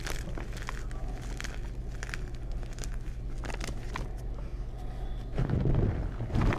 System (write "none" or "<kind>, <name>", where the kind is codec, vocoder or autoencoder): none